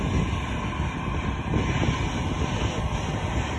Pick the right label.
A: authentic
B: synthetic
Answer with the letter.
A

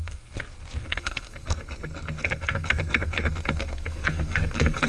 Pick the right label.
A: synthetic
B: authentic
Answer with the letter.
A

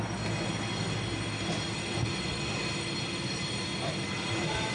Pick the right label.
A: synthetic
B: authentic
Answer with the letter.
B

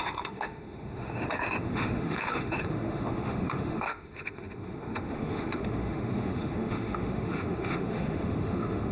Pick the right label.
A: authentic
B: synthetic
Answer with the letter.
B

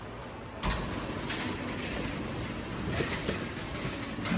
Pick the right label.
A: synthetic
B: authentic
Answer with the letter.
B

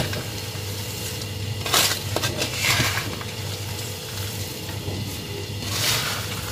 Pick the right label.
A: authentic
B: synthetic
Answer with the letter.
A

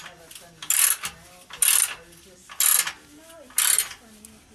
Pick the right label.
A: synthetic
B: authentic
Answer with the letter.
B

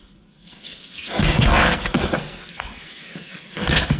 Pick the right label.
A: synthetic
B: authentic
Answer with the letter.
A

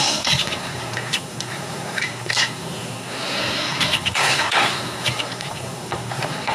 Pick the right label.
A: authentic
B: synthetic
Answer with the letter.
B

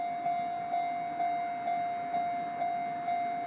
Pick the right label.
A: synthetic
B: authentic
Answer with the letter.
B